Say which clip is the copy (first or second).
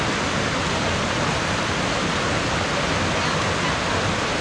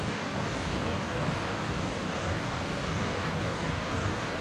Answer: second